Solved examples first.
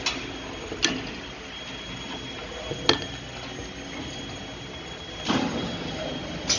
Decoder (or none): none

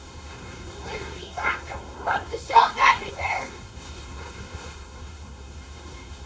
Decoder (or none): codec, SNAC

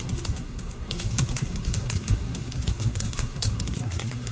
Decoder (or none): codec, SNAC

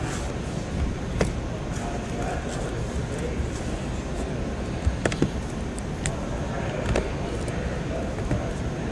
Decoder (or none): none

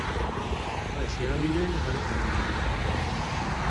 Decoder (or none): none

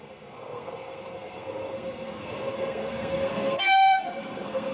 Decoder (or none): codec, SNAC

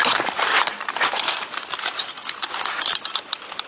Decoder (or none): none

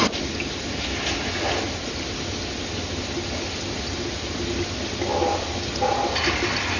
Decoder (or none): none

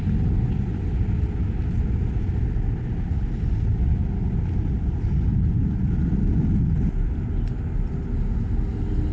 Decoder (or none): none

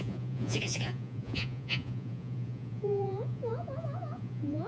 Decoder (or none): vocoder, Vocos